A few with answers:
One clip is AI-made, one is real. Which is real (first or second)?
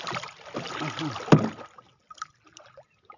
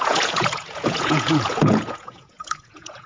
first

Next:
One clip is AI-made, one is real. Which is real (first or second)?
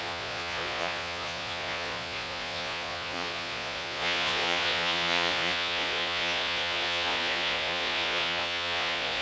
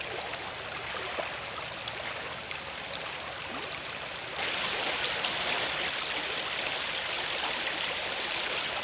second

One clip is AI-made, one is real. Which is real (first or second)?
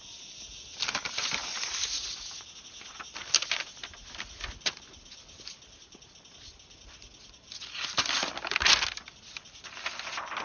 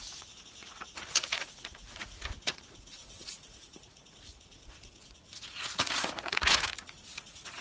first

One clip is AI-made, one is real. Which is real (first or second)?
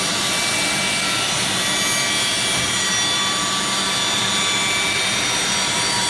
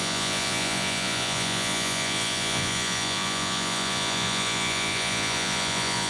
first